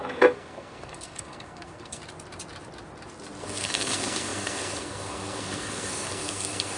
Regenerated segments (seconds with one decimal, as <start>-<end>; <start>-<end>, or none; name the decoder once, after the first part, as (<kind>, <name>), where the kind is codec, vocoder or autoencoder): 0.0-2.0 (codec, SNAC); 3.4-6.8